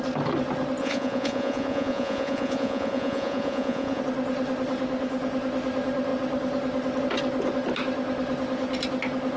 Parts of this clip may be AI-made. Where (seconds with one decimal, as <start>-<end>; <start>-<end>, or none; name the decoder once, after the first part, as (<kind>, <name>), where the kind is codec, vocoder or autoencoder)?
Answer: 0.8-4.0 (vocoder, Vocos)